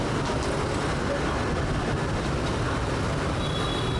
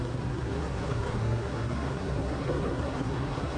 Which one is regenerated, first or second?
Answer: second